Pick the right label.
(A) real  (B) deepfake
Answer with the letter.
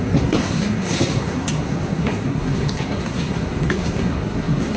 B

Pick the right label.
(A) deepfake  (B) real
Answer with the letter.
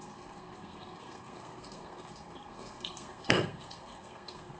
A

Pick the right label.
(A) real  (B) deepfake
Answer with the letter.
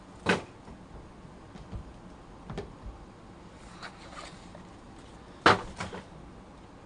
A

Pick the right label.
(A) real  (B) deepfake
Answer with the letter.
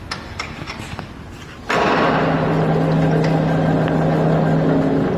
A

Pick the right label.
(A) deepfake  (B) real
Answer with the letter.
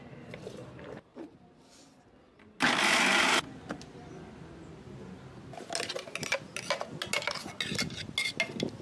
B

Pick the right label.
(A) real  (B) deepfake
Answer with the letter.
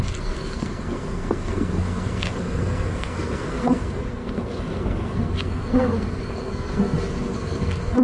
B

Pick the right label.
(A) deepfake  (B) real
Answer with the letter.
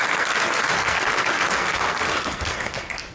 A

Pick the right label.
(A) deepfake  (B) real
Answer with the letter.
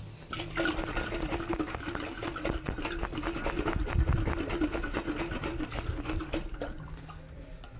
B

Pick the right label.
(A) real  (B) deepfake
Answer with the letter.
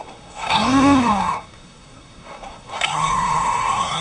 B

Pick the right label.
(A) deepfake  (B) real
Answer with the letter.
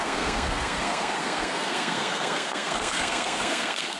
A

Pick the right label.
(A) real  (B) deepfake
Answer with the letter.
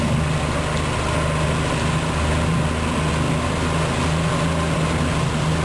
A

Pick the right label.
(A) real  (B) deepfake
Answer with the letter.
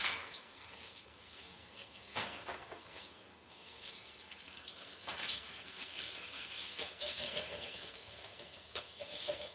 B